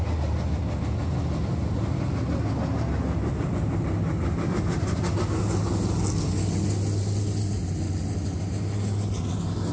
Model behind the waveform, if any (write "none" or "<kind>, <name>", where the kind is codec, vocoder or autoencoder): none